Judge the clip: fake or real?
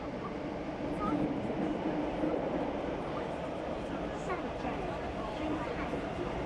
fake